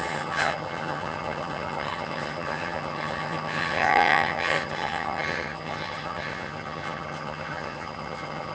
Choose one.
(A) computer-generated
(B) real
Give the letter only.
A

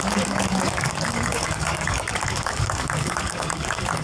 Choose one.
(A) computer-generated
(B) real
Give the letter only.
A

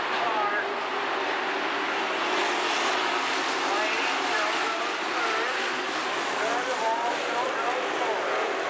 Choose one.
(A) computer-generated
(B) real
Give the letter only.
B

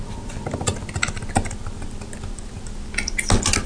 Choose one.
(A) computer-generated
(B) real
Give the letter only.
B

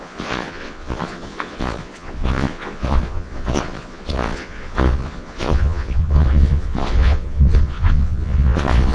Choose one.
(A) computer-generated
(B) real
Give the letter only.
A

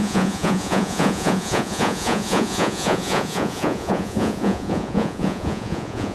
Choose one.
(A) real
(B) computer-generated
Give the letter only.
B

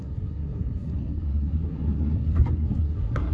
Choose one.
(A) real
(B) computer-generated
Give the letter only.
B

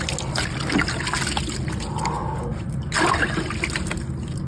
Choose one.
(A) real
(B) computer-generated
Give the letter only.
A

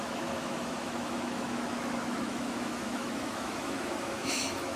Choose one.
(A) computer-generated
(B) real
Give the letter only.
A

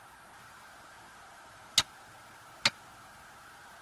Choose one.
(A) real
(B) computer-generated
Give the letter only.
A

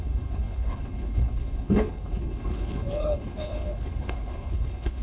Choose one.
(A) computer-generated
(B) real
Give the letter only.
A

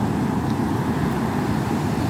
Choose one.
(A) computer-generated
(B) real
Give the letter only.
B